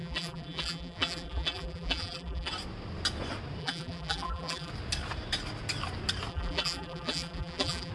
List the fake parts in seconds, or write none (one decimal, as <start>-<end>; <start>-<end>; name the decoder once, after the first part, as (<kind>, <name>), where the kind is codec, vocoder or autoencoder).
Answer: 0.0-2.5 (vocoder, BigVGAN v2); 3.6-4.7; 6.3-7.9